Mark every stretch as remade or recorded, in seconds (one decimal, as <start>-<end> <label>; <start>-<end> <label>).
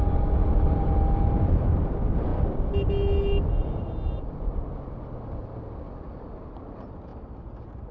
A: 0.0-7.9 recorded